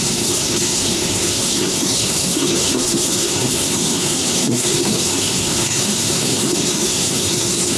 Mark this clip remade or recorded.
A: remade